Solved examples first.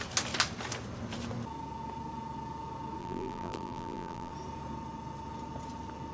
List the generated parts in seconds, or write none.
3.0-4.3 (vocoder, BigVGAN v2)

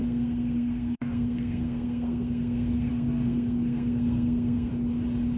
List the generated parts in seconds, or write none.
0.0-4.7 (codec, SNAC)

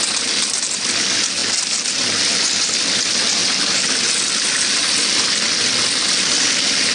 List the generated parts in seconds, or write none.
none